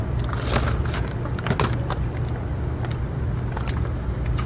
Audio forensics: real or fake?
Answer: real